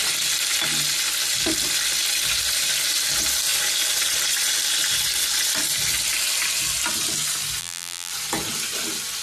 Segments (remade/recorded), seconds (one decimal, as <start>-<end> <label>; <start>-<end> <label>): 0.0-7.6 recorded; 7.6-8.1 remade; 8.1-9.2 recorded